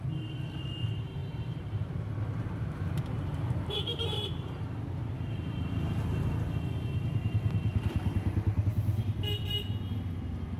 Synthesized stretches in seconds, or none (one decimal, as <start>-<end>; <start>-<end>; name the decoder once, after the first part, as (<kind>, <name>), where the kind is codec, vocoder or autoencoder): 1.2-4.6 (vocoder, BigVGAN v2)